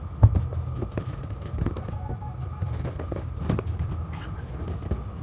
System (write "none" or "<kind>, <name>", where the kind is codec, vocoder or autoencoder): none